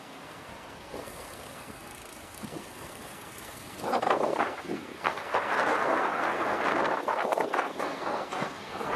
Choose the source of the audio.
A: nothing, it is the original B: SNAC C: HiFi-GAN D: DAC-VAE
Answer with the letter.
B